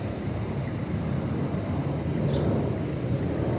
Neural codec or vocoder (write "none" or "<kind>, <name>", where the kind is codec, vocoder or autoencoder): none